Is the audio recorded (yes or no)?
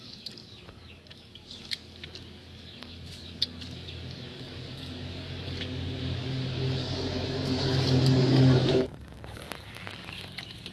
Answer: no